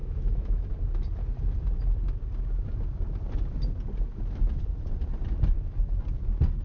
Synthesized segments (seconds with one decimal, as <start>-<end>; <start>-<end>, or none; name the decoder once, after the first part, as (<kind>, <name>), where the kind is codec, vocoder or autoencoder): 0.0-0.7 (autoencoder, DAC-VAE)